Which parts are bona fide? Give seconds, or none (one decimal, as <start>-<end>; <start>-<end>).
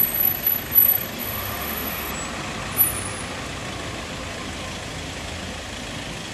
0.0-1.2; 2.1-6.3